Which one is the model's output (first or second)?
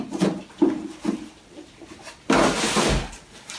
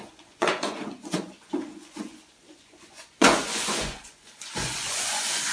second